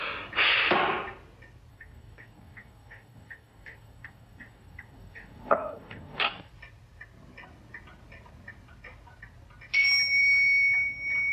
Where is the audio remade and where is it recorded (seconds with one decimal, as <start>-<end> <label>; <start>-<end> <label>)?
0.0-1.7 recorded; 1.7-6.5 remade; 6.5-11.3 recorded